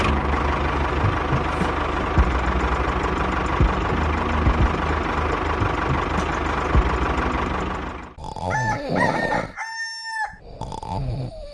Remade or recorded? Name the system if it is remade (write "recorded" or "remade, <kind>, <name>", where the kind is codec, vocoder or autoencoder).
recorded